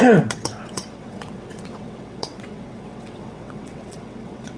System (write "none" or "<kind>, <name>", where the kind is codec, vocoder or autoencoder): vocoder, WaveNeXt